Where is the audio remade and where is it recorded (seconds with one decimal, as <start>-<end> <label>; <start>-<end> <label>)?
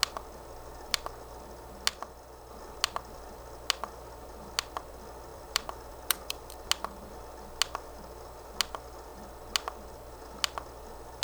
0.0-1.9 recorded; 1.9-2.5 remade; 2.5-5.3 recorded; 5.3-6.4 remade; 6.4-11.2 recorded